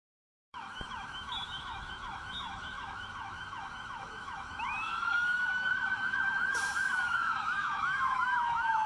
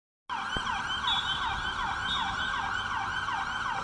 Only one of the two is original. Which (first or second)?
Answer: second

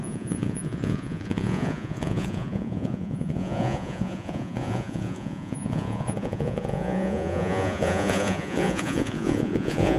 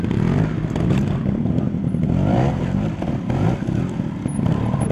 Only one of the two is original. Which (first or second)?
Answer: second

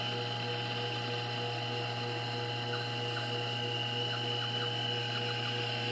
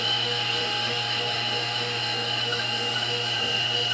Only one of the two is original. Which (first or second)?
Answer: first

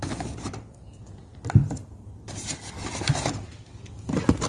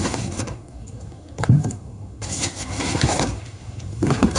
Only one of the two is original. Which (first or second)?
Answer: first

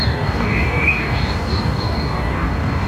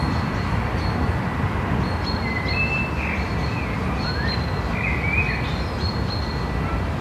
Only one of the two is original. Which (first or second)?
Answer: second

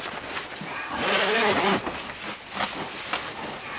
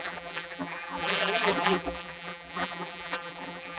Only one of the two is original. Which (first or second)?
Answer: first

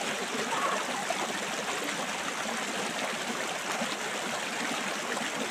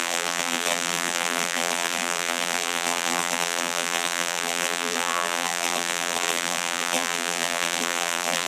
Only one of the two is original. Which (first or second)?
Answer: first